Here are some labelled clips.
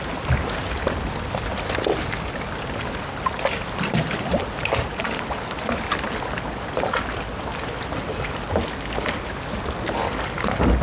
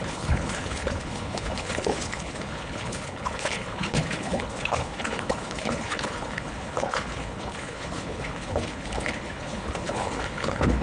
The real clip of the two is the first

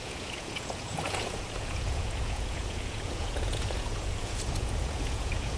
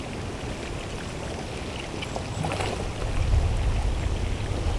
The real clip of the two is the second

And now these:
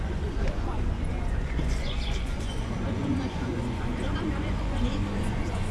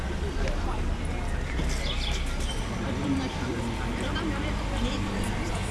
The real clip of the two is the second